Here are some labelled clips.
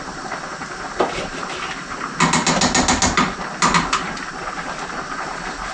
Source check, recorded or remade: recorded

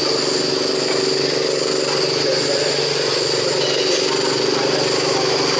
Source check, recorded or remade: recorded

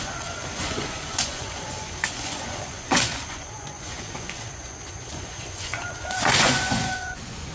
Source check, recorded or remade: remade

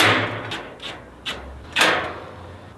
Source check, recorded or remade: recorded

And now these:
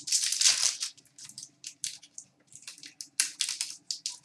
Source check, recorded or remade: recorded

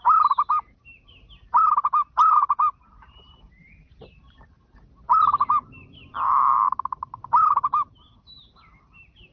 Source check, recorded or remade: remade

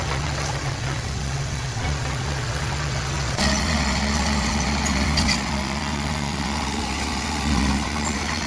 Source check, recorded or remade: remade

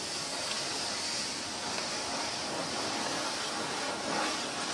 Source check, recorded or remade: recorded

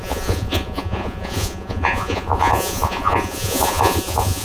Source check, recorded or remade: remade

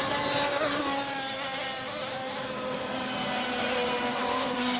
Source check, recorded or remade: recorded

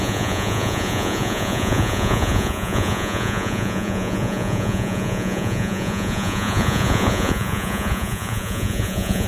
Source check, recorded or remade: remade